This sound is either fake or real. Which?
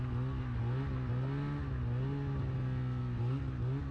real